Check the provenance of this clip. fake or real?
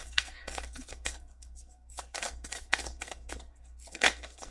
fake